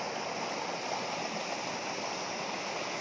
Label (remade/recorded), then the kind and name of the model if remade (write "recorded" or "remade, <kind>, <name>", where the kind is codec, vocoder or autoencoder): recorded